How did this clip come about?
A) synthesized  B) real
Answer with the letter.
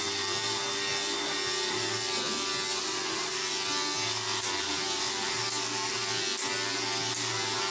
B